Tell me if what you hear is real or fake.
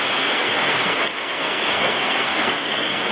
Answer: fake